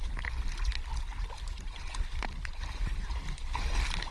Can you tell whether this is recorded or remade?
recorded